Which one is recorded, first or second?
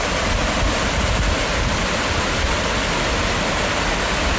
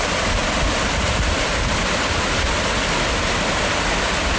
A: first